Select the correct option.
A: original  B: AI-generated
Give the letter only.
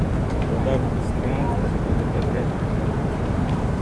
B